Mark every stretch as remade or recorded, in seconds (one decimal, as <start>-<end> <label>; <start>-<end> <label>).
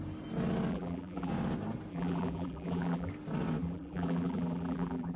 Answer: 0.0-0.7 recorded; 0.7-1.3 remade; 1.3-1.9 recorded; 1.9-3.1 remade; 3.1-3.6 recorded; 3.6-5.2 remade